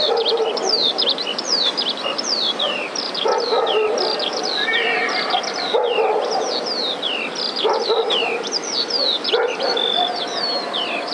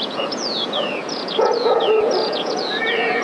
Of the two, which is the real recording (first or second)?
first